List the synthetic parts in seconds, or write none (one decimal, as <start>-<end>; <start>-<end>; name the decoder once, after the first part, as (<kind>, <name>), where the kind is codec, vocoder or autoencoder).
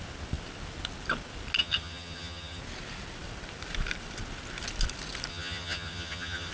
1.6-2.6 (vocoder, HiFi-GAN); 5.3-6.5